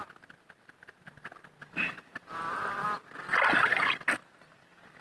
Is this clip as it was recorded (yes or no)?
yes